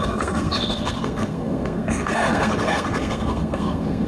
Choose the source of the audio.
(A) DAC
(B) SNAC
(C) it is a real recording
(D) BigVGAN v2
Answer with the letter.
B